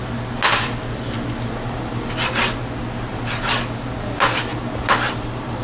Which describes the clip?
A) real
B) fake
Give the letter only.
A